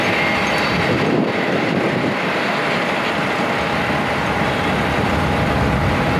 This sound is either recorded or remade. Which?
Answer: recorded